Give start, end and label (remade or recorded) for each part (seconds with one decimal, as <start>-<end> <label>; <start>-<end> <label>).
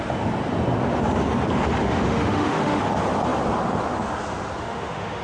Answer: 0.0-1.8 recorded; 1.8-2.8 remade; 2.8-4.6 recorded; 4.6-5.2 remade